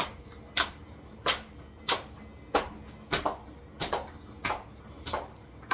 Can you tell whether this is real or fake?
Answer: real